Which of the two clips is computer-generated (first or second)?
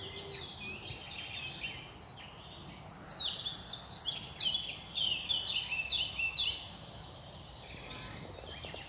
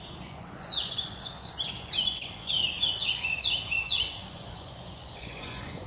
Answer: second